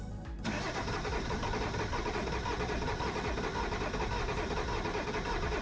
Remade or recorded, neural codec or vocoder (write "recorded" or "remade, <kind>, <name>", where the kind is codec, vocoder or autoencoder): recorded